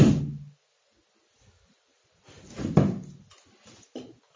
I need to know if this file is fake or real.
real